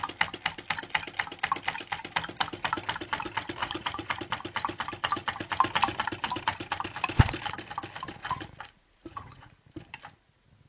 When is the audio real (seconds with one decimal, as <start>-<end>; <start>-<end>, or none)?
0.0-3.6; 4.2-8.2; 9.6-10.7